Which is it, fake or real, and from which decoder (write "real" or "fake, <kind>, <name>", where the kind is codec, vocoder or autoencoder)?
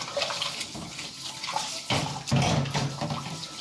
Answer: real